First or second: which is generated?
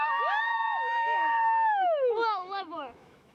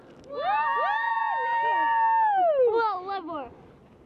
first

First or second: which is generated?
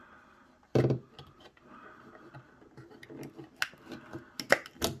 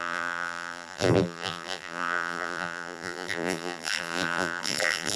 second